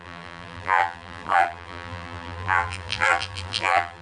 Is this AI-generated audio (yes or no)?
yes